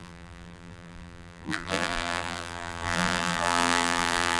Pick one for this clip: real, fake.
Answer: fake